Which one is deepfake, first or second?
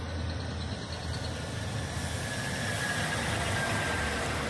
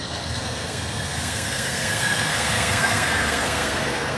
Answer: second